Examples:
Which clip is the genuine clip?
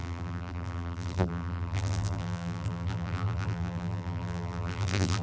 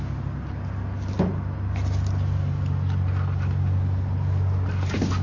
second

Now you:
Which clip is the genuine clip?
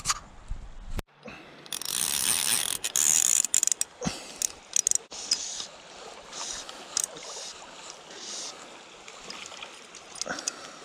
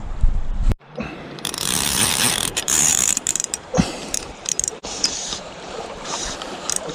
first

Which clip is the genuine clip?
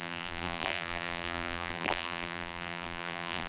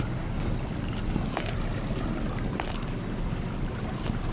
second